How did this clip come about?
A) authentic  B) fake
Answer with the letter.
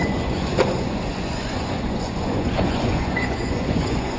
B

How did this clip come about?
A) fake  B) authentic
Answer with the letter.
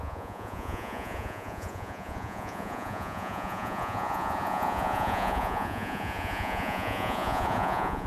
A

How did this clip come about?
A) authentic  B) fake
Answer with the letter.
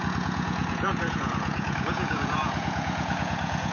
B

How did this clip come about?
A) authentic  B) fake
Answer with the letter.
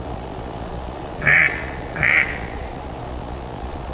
B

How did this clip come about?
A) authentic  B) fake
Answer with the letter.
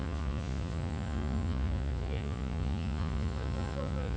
B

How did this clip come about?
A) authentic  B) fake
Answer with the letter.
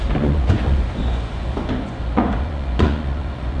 B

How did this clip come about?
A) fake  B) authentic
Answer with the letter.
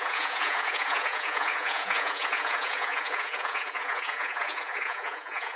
A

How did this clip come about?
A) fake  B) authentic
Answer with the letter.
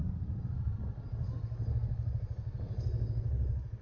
B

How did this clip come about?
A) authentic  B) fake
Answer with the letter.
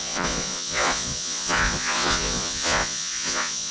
B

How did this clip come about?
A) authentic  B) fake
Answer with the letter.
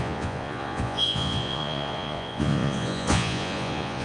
B